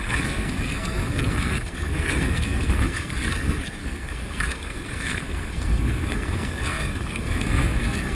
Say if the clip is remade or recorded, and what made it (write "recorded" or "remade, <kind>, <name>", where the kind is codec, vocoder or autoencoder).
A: remade, codec, SNAC